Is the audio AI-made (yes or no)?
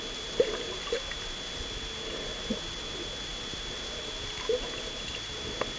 no